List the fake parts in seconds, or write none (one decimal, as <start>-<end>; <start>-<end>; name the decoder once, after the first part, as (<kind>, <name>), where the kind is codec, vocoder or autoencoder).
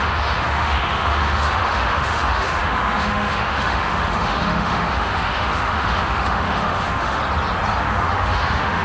0.0-7.2 (autoencoder, DAC-VAE); 7.8-8.8